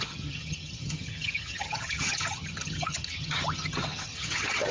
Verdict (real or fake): fake